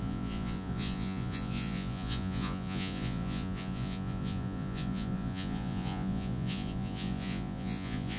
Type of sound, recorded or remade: remade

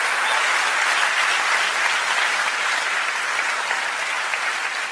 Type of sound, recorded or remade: recorded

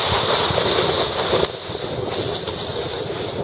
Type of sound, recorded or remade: recorded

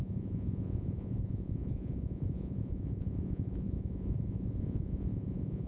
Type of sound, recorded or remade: remade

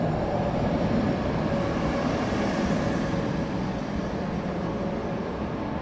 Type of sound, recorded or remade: recorded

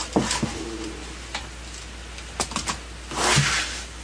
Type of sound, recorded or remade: recorded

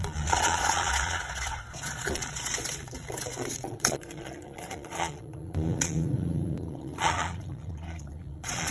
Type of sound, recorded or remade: remade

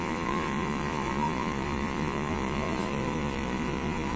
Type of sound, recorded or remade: remade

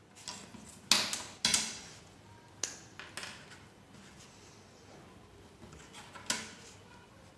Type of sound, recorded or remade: recorded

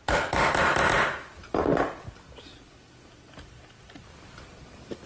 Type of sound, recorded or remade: recorded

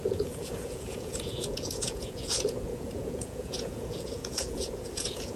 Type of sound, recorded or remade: remade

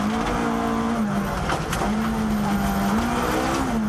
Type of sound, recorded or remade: recorded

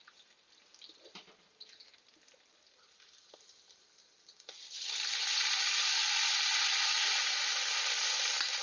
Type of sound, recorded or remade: recorded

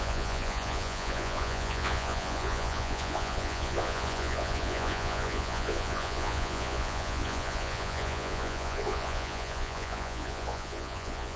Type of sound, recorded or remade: remade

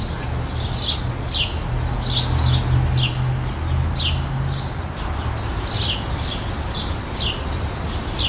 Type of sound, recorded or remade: recorded